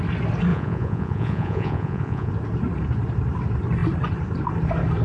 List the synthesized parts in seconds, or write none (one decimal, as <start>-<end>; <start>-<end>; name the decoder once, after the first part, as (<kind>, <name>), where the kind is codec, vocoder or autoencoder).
0.5-2.3 (vocoder, Vocos)